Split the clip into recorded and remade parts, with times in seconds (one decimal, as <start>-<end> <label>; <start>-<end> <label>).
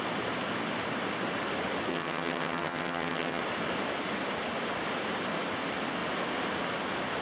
0.0-1.9 recorded; 1.9-3.4 remade; 3.4-7.2 recorded